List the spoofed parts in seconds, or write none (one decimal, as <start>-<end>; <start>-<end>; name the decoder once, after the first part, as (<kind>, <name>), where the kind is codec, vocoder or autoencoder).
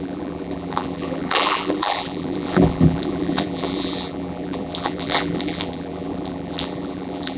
0.0-7.4 (vocoder, BigVGAN v2)